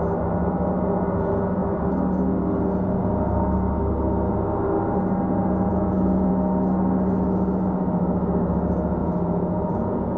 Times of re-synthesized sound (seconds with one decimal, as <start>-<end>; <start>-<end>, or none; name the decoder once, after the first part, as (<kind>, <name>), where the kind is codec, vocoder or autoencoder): 5.7-6.3 (vocoder, Vocos); 9.0-10.2